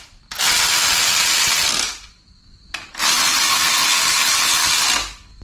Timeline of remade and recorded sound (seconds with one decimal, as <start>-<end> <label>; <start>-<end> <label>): 0.0-5.4 recorded